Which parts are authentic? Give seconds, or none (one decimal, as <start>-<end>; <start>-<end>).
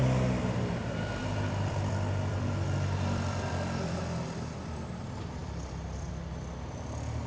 0.0-1.2; 4.0-5.4; 6.1-7.3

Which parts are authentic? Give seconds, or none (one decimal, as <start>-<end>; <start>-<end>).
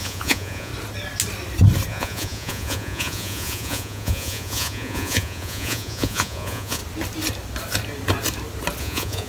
0.7-1.9; 6.8-8.8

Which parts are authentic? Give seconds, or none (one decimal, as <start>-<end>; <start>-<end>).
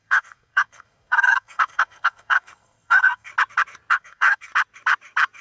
3.3-3.9; 4.5-5.4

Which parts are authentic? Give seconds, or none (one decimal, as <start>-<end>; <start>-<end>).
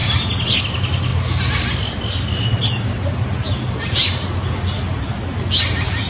0.0-6.1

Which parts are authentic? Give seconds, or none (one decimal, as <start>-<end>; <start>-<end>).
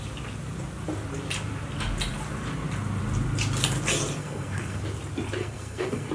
0.0-4.2; 4.8-5.4